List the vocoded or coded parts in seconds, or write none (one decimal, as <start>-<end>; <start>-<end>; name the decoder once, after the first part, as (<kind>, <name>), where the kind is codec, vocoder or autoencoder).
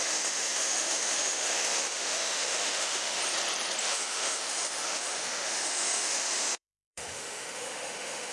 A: 0.0-3.2 (autoencoder, DAC-VAE); 3.8-8.3